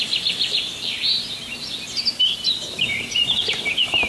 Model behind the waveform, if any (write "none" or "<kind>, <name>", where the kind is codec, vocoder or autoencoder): none